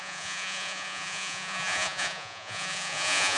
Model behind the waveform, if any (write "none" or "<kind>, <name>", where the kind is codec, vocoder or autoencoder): vocoder, Vocos